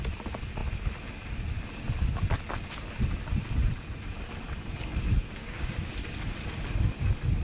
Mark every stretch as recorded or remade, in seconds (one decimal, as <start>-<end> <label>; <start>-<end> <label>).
0.0-5.4 recorded; 5.4-5.9 remade; 5.9-7.4 recorded